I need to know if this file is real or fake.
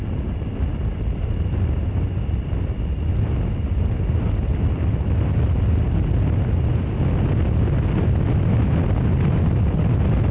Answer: real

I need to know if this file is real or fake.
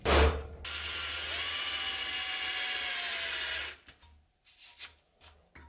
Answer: real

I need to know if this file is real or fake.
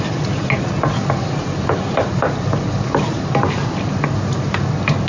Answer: real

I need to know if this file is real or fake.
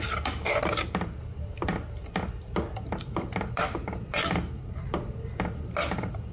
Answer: real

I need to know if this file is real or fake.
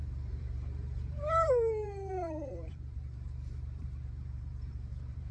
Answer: fake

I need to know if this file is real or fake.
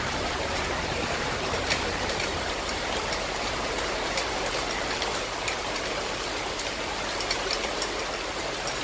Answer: fake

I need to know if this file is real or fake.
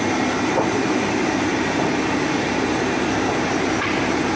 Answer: fake